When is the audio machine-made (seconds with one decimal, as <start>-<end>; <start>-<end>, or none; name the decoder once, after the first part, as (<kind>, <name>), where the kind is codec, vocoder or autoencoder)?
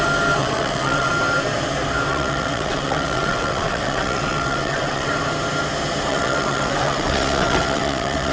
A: 0.4-1.1 (vocoder, WaveNeXt); 2.1-5.1; 6.1-8.3